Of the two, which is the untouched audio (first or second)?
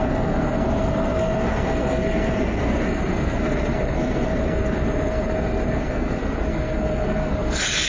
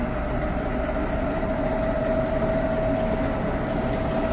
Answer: second